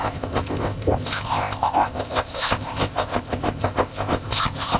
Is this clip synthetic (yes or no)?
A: yes